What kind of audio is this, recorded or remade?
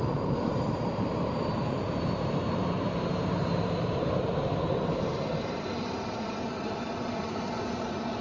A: remade